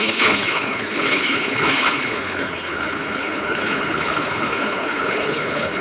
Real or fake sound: fake